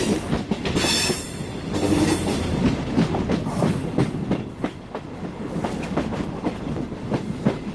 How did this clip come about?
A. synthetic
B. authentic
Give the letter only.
B